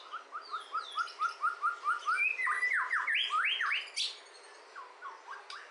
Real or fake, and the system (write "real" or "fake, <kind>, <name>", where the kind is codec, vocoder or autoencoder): real